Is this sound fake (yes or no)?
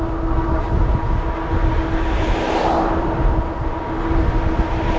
no